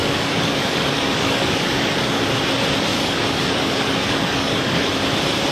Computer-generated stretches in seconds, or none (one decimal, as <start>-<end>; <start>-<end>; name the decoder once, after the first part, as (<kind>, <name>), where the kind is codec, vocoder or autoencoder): 0.0-2.2 (codec, DAC); 2.9-4.9